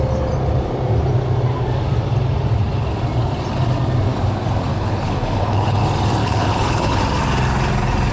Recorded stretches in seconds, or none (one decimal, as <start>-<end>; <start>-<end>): 0.0-4.7; 5.8-6.2; 7.0-8.1